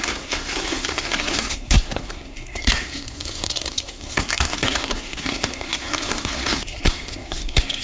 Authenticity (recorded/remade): remade